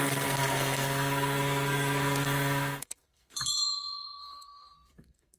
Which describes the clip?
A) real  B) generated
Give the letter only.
B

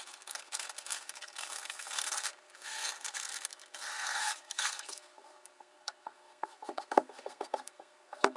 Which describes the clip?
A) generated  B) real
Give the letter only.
A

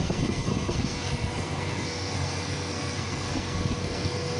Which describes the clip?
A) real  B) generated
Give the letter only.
B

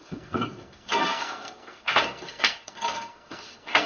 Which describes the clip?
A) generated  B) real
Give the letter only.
A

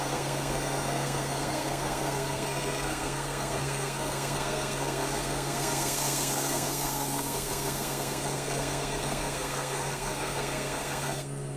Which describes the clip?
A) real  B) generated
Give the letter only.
B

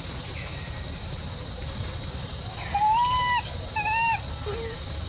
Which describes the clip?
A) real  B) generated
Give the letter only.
A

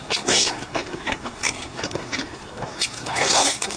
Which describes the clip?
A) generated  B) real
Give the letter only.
A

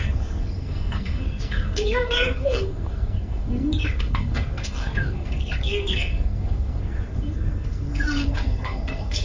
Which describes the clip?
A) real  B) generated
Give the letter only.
B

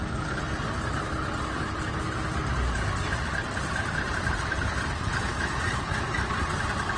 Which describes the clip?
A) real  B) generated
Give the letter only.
A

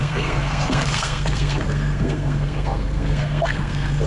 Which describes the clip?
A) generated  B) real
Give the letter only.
A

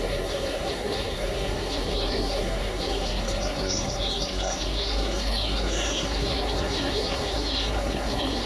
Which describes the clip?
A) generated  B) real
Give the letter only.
A